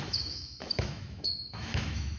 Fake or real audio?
fake